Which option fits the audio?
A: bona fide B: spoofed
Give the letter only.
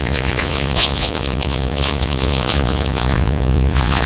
B